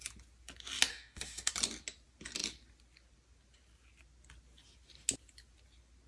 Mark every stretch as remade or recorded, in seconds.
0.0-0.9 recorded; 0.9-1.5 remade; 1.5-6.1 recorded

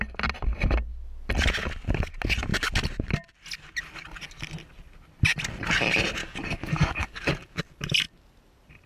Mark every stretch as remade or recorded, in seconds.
0.0-6.2 recorded; 6.2-7.6 remade; 7.6-8.9 recorded

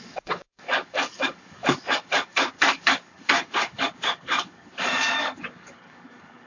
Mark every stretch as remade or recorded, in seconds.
0.0-6.5 remade